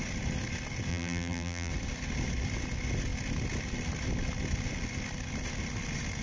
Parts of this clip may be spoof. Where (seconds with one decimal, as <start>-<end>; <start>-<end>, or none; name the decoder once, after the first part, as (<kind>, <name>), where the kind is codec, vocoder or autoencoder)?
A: 0.9-1.7 (vocoder, BigVGAN v2)